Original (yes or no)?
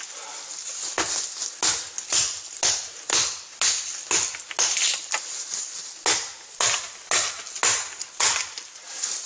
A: yes